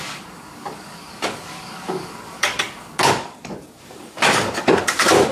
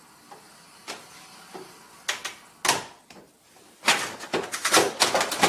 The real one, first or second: second